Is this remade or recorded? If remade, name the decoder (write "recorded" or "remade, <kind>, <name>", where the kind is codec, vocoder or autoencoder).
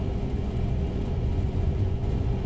remade, vocoder, Vocos